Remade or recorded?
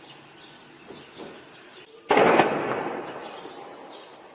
recorded